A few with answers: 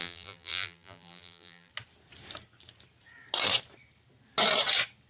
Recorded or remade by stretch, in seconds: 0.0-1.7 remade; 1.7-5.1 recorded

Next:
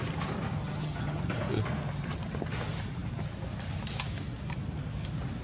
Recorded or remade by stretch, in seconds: 0.0-0.6 recorded; 0.6-1.2 remade; 1.2-5.4 recorded

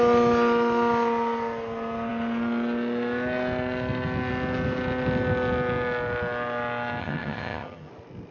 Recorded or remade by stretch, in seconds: 0.0-7.0 recorded; 7.0-7.9 remade; 7.9-8.3 recorded

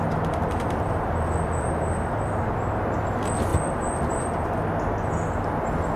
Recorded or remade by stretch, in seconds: 0.0-6.0 recorded